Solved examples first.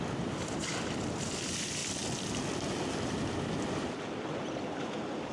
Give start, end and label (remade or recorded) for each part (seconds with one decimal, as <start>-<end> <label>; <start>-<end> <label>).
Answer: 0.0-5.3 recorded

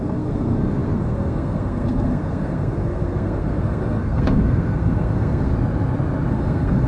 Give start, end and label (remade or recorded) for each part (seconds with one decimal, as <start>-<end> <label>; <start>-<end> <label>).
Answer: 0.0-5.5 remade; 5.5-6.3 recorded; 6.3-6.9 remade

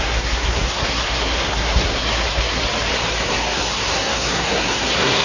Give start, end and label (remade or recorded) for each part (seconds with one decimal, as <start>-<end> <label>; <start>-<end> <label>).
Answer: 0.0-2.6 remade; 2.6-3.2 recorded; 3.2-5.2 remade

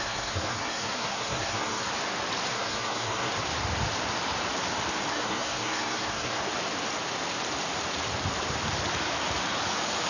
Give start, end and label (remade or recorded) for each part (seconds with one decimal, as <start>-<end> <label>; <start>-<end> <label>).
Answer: 0.0-1.9 remade; 1.9-2.5 recorded; 2.5-3.3 remade; 3.3-5.1 recorded; 5.1-6.4 remade; 6.4-10.1 recorded

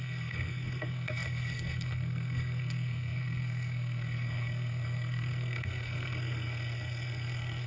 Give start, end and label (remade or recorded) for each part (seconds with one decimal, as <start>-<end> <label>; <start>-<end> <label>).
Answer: 0.0-7.7 remade

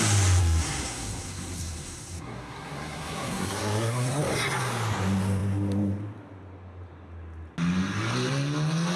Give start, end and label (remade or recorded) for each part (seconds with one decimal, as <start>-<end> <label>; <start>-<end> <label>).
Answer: 0.0-0.4 recorded; 0.4-4.2 remade; 4.2-9.0 recorded